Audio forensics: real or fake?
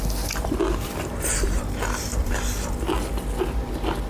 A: real